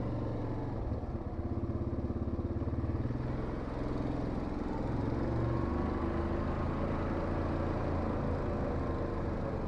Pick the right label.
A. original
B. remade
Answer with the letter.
A